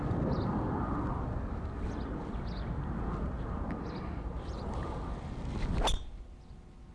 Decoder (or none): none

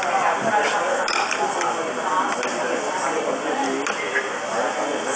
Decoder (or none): none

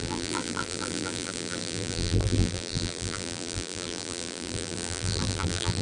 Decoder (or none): vocoder, BigVGAN v2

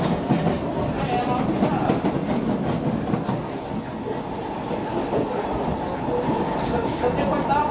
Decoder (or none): none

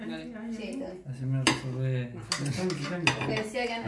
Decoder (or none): none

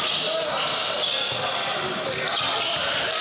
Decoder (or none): none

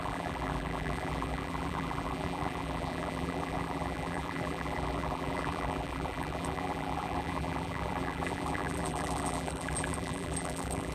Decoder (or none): vocoder, BigVGAN v2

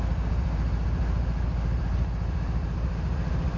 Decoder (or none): none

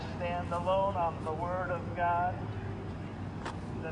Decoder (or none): none